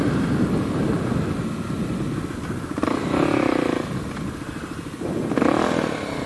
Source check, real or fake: real